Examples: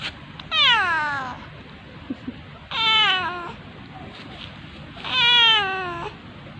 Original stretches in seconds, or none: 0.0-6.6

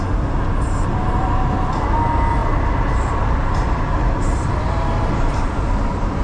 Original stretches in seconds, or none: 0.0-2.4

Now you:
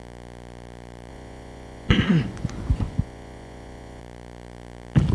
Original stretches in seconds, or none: 0.0-1.1; 4.0-5.1